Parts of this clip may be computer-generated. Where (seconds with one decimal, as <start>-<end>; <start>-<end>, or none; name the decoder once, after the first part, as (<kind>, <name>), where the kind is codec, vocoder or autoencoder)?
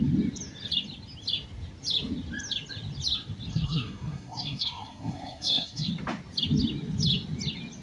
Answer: 3.5-5.9 (codec, SNAC)